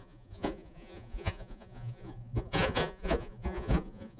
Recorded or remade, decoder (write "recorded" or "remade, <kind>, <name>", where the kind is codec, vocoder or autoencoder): remade, vocoder, Vocos